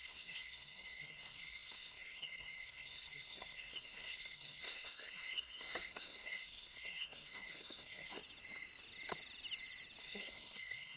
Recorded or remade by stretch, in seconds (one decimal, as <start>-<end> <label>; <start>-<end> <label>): 0.0-8.2 remade; 8.2-10.0 recorded; 10.0-11.0 remade